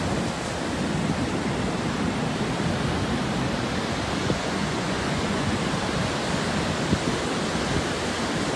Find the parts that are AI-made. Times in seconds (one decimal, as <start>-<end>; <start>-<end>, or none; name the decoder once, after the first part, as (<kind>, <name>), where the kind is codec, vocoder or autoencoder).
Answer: 4.2-5.6 (vocoder, Vocos)